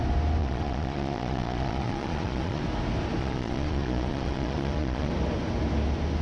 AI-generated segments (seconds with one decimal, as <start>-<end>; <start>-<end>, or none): 0.4-2.6; 3.2-5.1